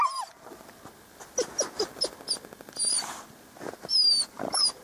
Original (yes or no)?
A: yes